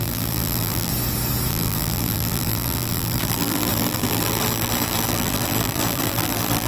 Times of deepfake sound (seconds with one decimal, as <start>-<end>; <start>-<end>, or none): 0.0-0.9; 1.5-6.7